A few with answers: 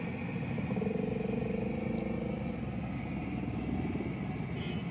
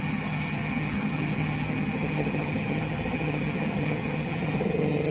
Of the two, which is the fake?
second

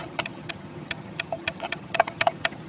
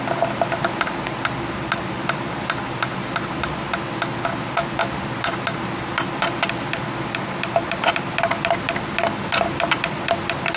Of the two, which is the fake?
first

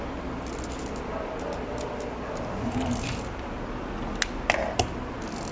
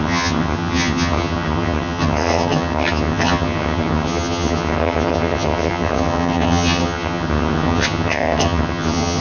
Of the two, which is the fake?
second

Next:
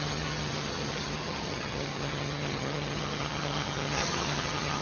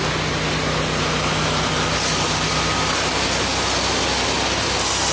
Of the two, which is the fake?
first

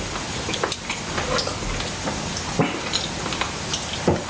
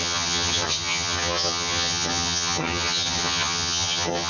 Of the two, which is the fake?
second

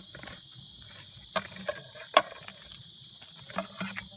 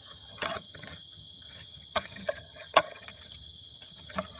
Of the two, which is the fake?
second